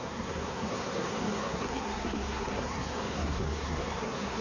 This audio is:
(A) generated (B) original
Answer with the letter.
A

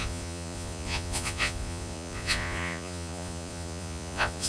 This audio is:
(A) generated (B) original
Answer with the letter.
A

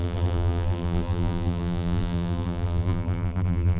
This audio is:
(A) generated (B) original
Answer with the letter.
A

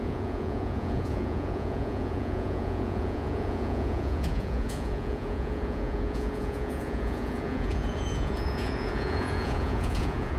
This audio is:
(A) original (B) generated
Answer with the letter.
B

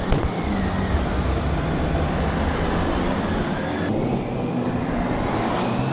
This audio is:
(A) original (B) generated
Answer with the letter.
A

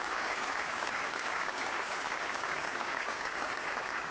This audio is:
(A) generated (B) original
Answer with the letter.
A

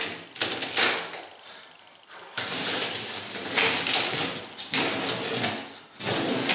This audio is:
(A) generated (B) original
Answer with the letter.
B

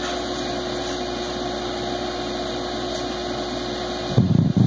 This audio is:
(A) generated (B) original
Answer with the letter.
B